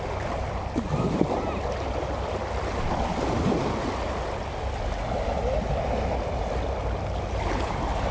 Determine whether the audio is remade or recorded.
recorded